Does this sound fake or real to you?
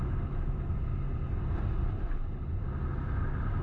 real